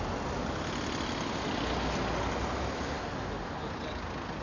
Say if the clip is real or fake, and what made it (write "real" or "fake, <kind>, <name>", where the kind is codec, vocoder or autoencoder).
real